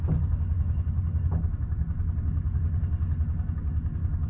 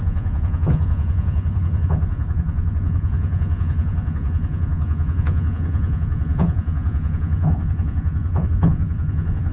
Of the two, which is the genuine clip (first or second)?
first